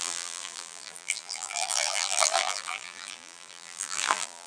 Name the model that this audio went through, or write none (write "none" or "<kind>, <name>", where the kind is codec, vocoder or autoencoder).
vocoder, BigVGAN v2